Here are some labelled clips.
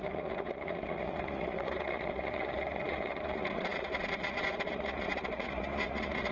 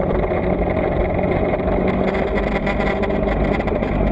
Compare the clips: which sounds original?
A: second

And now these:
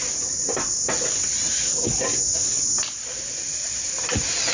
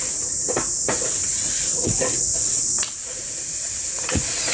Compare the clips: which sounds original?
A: first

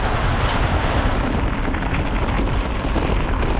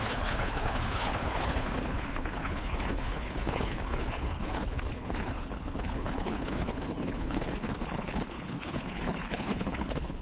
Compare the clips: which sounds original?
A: first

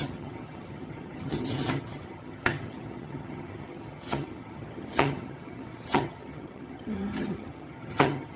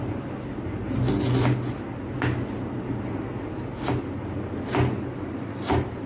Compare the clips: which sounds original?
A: second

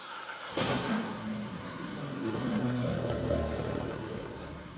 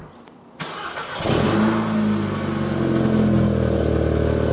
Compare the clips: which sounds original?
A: second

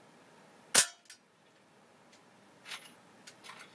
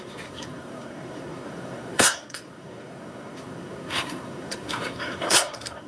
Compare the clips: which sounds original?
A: first